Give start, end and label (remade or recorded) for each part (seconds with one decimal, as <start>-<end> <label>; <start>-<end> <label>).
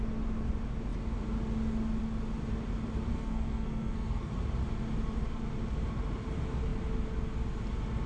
0.0-3.1 recorded; 3.1-4.3 remade; 4.3-8.1 recorded